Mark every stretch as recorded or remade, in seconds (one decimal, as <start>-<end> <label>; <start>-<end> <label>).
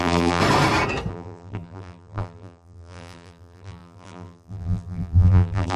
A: 0.0-0.4 remade; 0.4-1.1 recorded; 1.1-5.8 remade